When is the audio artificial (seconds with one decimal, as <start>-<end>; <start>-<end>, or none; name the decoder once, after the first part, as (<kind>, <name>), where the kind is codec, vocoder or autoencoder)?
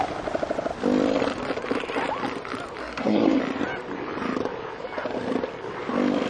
2.8-3.4 (codec, SNAC)